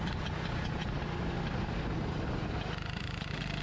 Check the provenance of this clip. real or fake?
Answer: real